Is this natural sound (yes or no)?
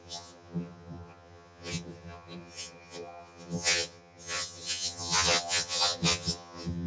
no